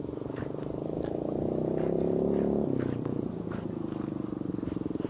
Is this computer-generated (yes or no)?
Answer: no